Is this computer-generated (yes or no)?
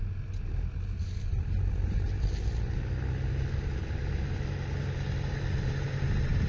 no